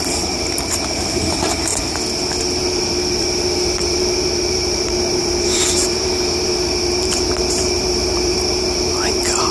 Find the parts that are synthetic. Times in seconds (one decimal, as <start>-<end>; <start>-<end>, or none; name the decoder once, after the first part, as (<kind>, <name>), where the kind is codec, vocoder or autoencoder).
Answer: 0.0-1.7 (vocoder, BigVGAN v2); 2.6-9.5